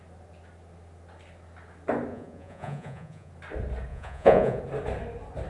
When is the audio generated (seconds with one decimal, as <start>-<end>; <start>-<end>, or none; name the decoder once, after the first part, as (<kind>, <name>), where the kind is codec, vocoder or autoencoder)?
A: 2.1-3.3 (vocoder, Vocos); 3.9-4.6